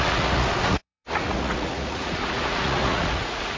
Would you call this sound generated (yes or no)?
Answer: yes